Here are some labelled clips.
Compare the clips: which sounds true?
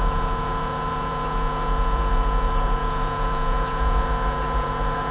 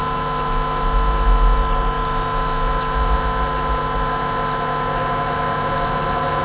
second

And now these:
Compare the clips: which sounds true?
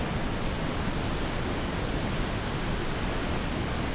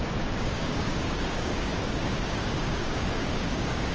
first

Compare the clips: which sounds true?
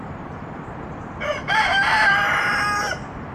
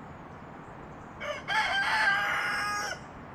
second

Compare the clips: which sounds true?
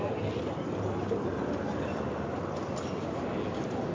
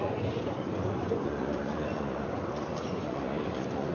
first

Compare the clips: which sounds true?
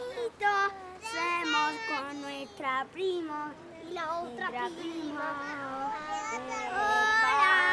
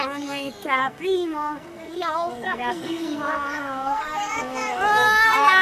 first